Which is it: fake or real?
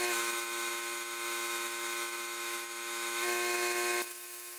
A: fake